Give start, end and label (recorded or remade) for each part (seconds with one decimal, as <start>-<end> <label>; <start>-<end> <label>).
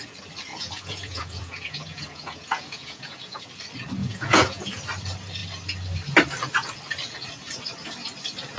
0.0-0.5 recorded; 0.5-3.5 remade; 3.5-4.0 recorded; 4.0-4.8 remade; 4.8-8.6 recorded